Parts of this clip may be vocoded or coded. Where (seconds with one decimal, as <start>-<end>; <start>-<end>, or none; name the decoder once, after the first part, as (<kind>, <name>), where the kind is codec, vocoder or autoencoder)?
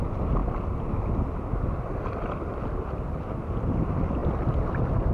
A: none